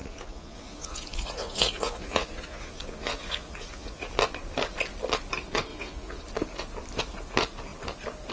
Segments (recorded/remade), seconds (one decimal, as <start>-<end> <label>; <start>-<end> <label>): 0.0-4.1 remade; 4.1-5.7 recorded; 5.7-6.2 remade; 6.2-8.3 recorded